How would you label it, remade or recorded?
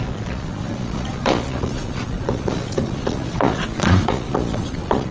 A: remade